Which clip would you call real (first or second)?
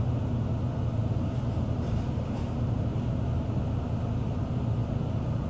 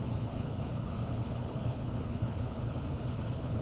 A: first